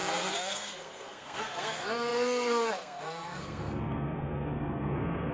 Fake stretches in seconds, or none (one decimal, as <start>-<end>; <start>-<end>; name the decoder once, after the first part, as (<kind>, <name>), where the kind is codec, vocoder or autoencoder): 0.0-5.3 (codec, SNAC)